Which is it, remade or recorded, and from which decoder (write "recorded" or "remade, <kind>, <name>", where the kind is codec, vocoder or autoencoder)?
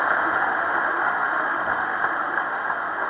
remade, autoencoder, DAC-VAE